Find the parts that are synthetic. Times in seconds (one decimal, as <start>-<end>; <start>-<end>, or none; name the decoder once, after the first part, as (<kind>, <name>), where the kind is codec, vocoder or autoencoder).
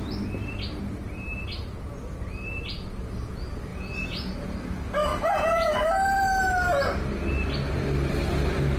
3.7-4.3 (vocoder, Vocos); 5.1-5.7